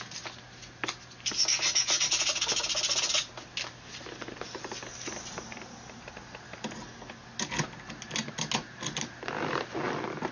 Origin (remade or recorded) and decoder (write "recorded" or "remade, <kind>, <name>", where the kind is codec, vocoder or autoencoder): recorded